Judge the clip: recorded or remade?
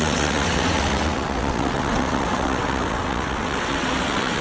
remade